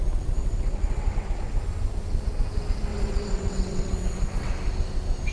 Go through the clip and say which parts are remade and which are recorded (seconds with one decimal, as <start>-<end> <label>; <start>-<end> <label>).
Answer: 0.0-0.4 recorded; 0.4-1.6 remade; 1.6-2.9 recorded; 2.9-4.5 remade; 4.5-5.3 recorded